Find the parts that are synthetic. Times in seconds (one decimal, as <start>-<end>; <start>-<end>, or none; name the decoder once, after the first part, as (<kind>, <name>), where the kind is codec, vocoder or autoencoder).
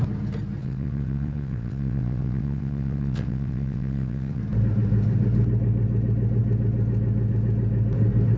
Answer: 0.6-4.4 (vocoder, WaveNeXt)